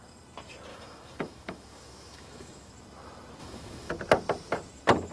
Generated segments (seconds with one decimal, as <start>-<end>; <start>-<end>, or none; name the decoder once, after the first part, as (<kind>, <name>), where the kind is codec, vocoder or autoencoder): 0.7-2.7 (autoencoder, DAC-VAE); 3.4-3.9